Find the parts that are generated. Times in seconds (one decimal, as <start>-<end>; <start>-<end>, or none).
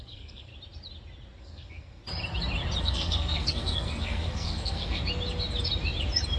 0.0-0.5; 1.4-2.0; 2.8-5.0